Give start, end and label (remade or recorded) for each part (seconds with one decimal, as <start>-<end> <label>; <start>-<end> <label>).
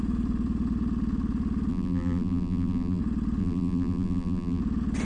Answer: 0.0-1.7 recorded; 1.7-3.0 remade; 3.0-3.4 recorded; 3.4-4.6 remade; 4.6-5.0 recorded